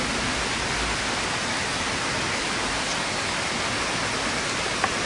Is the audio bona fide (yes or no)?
yes